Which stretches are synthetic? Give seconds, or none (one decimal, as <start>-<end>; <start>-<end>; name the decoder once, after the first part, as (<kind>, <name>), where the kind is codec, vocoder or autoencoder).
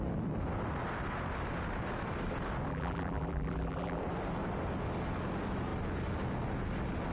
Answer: 2.7-4.0 (vocoder, BigVGAN v2)